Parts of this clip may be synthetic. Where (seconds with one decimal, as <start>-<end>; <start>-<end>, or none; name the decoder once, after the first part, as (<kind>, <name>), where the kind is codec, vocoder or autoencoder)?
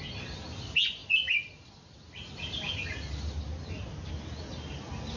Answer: none